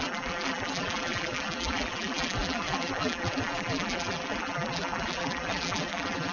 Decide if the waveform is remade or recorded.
remade